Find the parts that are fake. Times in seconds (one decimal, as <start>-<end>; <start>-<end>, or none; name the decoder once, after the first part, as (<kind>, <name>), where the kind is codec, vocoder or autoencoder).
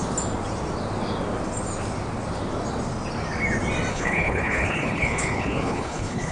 3.9-6.3 (codec, HILCodec)